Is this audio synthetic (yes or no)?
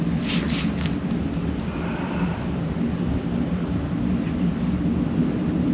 no